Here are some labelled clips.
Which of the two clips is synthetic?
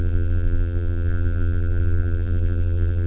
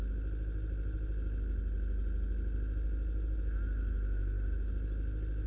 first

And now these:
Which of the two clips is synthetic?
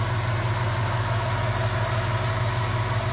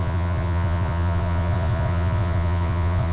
second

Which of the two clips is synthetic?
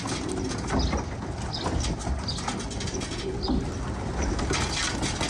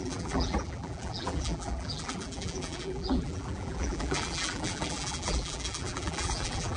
second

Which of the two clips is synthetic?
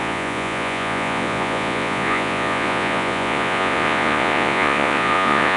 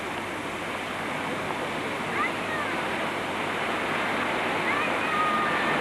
first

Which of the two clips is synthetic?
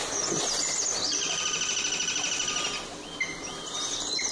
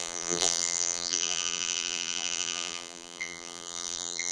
second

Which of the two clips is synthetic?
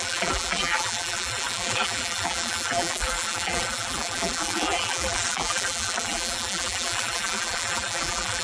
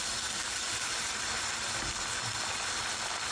first